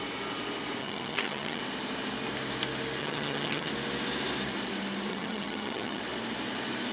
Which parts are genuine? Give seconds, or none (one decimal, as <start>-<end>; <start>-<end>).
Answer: 0.0-0.8; 1.6-3.0; 3.7-5.1; 6.0-6.9